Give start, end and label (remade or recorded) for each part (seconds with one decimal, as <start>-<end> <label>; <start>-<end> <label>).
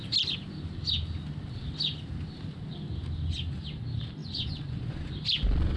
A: 0.0-4.2 recorded; 4.2-5.1 remade; 5.1-5.8 recorded